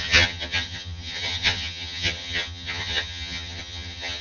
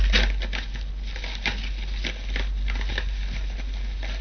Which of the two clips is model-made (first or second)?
first